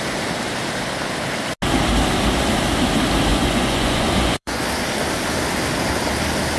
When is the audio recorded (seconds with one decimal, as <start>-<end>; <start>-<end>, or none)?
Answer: 0.0-3.3; 4.6-6.6